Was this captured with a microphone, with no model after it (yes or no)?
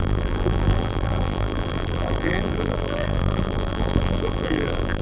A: no